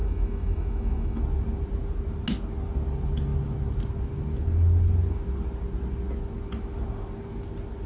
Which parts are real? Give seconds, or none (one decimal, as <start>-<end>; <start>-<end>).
1.2-7.9

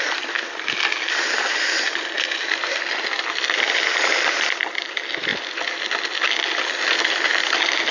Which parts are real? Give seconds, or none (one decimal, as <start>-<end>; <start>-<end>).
0.0-7.9